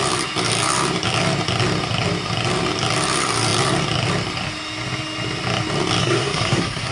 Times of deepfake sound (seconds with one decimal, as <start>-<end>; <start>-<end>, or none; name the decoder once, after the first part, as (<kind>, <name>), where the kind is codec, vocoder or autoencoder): 6.0-6.9 (codec, SNAC)